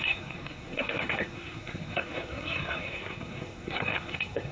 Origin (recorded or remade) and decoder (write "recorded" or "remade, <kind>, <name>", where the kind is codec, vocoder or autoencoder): remade, codec, SNAC